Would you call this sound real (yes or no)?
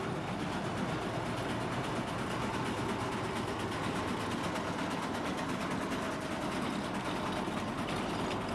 yes